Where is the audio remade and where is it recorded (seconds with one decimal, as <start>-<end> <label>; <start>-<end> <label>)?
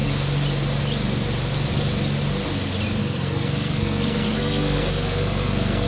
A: 0.0-3.0 recorded; 3.0-5.9 remade